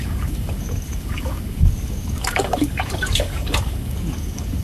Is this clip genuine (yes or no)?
no